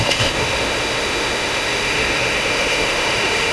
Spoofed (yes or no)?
yes